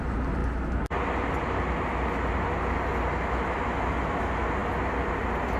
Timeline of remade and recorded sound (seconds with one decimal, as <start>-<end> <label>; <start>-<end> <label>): 0.0-5.6 recorded